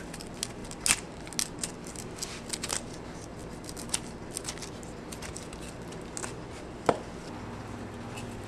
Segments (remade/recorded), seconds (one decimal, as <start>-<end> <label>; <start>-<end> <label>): 0.0-8.5 recorded